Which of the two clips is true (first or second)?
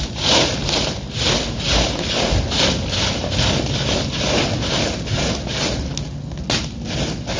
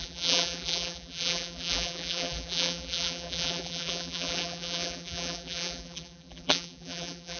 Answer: first